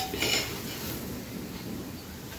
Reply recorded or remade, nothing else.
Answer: recorded